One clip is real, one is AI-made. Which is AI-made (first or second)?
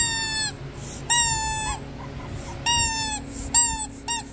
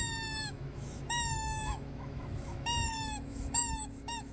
second